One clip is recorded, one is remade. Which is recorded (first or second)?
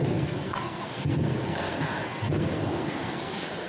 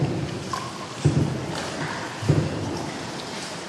second